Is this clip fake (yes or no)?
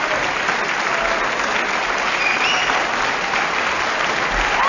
no